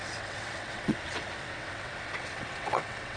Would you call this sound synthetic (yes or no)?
yes